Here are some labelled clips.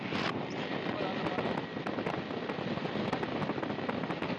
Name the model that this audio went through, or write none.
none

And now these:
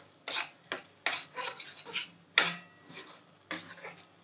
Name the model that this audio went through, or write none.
none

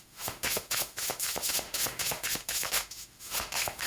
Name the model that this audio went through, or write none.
autoencoder, DAC-VAE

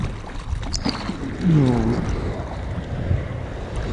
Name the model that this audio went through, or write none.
none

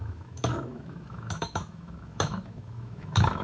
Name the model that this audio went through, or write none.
autoencoder, DAC-VAE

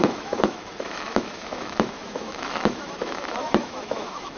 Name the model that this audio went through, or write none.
autoencoder, DAC-VAE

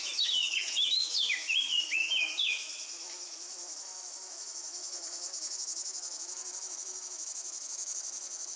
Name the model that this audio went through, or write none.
autoencoder, DAC-VAE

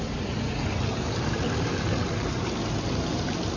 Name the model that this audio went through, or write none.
none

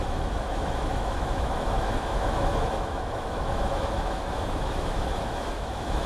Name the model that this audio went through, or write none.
autoencoder, DAC-VAE